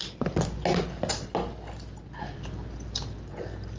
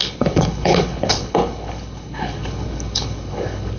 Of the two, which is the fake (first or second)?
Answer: second